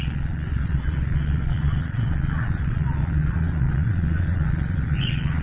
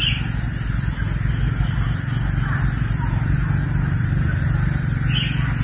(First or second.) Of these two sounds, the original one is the second